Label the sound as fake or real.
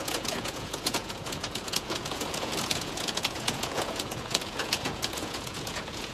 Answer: fake